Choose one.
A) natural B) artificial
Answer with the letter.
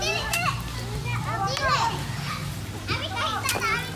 A